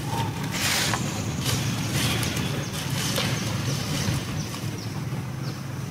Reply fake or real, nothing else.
real